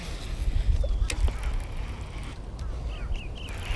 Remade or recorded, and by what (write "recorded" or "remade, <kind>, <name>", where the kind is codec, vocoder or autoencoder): recorded